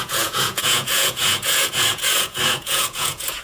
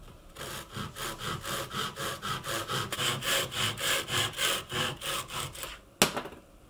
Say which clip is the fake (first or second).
first